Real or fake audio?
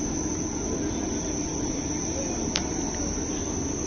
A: real